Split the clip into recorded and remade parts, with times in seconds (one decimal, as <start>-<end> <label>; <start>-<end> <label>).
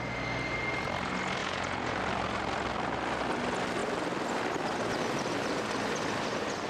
0.0-1.4 recorded; 1.4-2.0 remade; 2.0-6.7 recorded